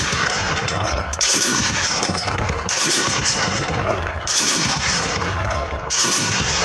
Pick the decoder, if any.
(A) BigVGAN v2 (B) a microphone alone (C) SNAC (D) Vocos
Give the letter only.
C